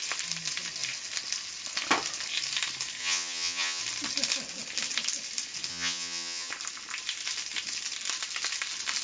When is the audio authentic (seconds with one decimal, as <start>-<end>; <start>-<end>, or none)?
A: 0.0-3.0; 3.8-5.7; 6.5-9.0